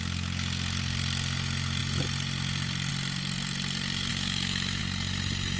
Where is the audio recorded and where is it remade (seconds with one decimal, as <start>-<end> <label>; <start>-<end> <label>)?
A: 0.0-4.1 recorded; 4.1-4.8 remade; 4.8-5.6 recorded